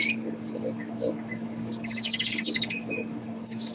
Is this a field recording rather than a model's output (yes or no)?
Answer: no